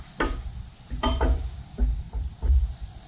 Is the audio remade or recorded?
recorded